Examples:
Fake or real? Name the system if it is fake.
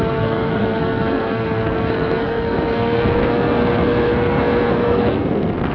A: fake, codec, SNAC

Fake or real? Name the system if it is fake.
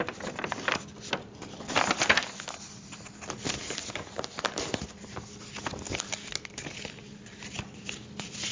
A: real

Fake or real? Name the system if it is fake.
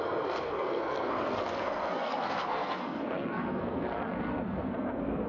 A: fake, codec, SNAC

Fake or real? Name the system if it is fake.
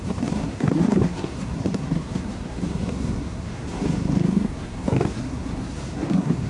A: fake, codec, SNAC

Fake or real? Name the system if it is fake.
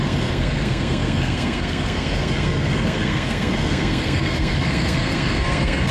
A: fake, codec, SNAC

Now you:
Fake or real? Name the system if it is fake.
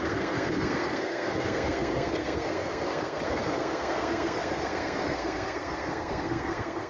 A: fake, codec, SNAC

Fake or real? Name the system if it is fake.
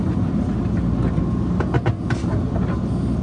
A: real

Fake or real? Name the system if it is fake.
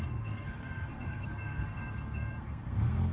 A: fake, codec, SNAC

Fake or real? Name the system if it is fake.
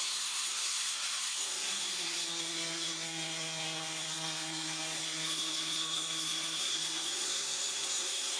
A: fake, codec, SNAC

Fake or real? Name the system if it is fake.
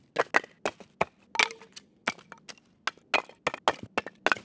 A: real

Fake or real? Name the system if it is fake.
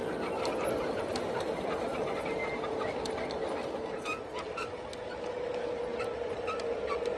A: real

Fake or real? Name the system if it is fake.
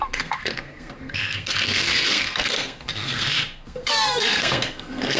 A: fake, codec, SNAC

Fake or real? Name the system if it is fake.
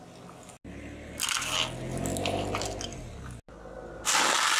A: real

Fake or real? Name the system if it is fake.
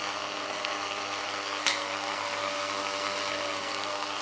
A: fake, codec, SNAC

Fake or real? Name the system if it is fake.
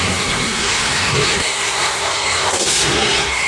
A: fake, codec, SNAC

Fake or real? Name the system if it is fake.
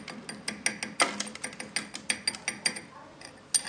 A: real